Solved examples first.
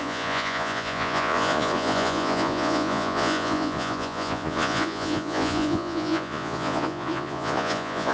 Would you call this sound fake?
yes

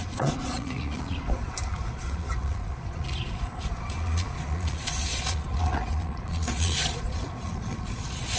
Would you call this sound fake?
yes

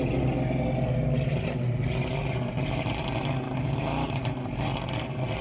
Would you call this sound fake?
no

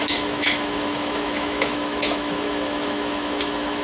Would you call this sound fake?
yes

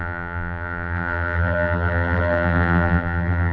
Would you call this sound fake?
yes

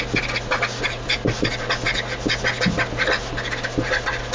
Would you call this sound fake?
no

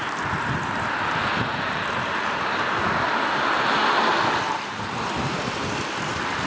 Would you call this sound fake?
no